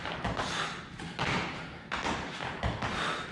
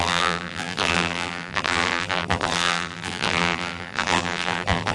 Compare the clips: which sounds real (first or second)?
first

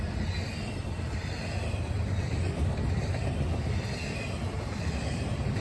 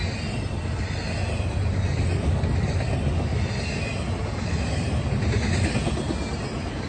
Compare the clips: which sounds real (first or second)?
second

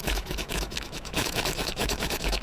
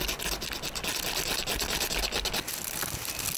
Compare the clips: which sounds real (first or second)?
second